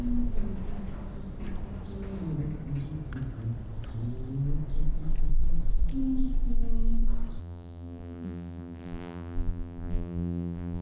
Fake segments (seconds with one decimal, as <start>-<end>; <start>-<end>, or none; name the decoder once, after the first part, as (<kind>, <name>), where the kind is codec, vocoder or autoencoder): 7.4-10.8 (vocoder, BigVGAN v2)